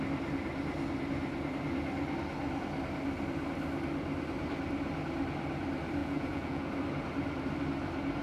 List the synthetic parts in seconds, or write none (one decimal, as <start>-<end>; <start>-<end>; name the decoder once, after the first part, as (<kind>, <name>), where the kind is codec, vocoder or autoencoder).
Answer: 6.0-6.7 (vocoder, Vocos)